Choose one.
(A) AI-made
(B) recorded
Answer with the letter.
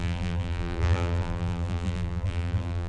A